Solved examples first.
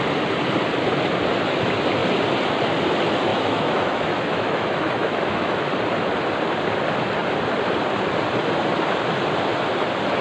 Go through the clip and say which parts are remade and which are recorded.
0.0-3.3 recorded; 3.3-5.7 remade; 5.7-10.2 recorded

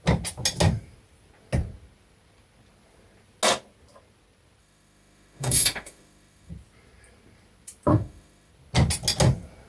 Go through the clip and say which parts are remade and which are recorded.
0.0-4.6 recorded; 4.6-6.5 remade; 6.5-7.9 recorded; 7.9-8.5 remade; 8.5-9.7 recorded

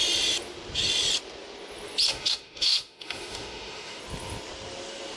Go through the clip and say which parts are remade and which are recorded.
0.0-2.1 recorded; 2.1-4.0 remade; 4.0-5.2 recorded

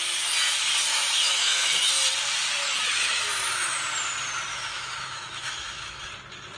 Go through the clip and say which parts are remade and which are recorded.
0.0-0.9 recorded; 0.9-1.9 remade; 1.9-2.6 recorded; 2.6-3.8 remade; 3.8-4.5 recorded; 4.5-6.1 remade; 6.1-6.6 recorded

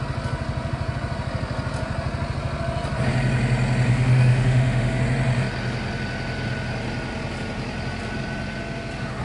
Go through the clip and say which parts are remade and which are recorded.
0.0-3.9 recorded; 3.9-5.0 remade; 5.0-9.2 recorded

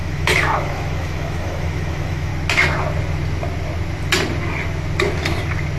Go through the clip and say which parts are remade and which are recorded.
0.0-2.3 remade; 2.3-5.8 recorded